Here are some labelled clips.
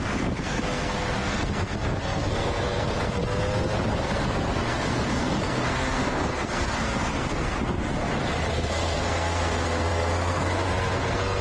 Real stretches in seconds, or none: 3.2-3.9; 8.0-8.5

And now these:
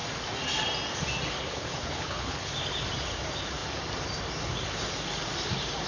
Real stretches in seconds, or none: 0.0-1.4; 2.5-5.9

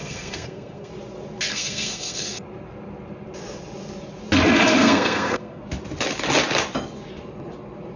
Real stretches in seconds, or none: 0.9-1.5; 2.4-4.7; 5.6-8.0

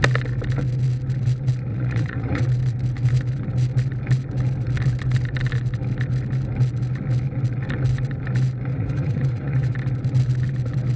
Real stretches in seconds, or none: 0.0-1.7; 2.4-8.7; 9.7-11.0

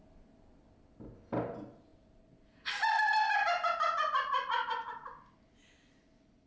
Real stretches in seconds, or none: 0.0-6.5

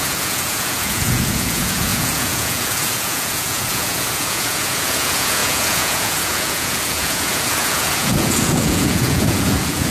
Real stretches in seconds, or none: none

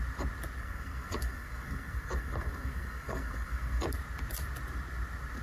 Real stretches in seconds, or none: 0.0-0.6; 3.8-5.4

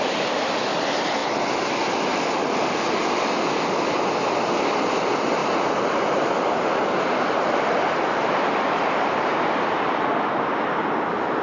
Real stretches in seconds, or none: 0.0-5.4; 9.9-11.4